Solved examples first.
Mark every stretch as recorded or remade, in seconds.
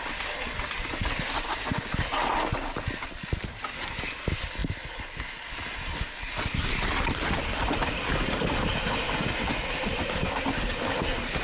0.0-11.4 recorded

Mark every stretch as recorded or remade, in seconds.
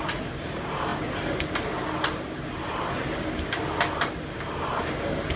0.0-5.4 recorded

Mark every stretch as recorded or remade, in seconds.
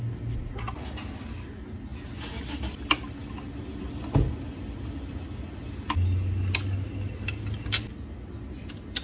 0.0-9.0 recorded